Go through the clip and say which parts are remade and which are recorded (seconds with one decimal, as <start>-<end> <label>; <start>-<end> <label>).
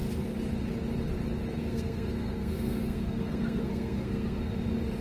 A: 0.0-1.6 recorded; 1.6-4.6 remade; 4.6-5.0 recorded